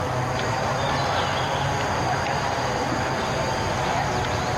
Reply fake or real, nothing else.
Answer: real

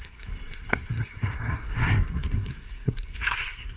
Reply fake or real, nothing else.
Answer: fake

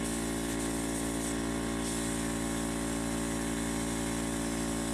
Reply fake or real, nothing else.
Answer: real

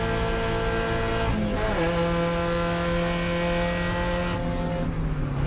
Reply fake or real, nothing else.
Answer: real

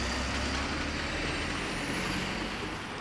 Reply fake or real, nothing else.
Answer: real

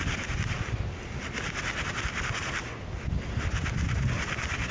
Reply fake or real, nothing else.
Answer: real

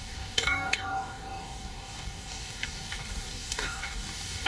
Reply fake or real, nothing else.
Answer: fake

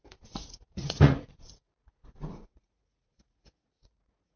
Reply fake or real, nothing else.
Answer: fake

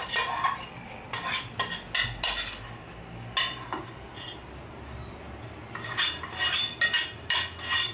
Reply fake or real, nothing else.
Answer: real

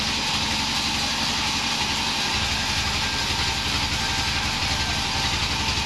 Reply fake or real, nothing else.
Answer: real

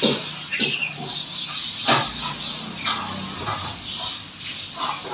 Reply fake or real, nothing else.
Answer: real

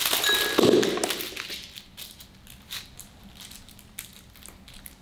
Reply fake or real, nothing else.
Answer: real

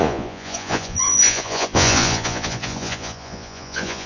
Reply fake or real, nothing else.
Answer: fake